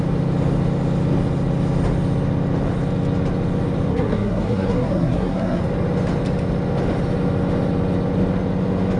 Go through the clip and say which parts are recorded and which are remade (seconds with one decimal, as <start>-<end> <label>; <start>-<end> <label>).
0.0-3.9 recorded; 3.9-5.6 remade; 5.6-9.0 recorded